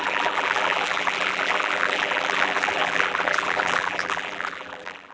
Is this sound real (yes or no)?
no